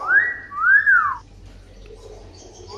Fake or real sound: real